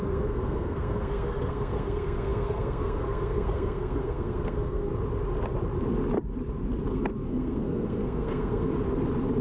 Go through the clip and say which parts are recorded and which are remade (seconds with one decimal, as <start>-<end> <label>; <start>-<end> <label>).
0.0-4.9 remade; 4.9-6.9 recorded; 6.9-8.7 remade; 8.7-9.4 recorded